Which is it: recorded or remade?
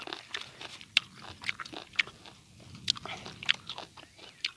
recorded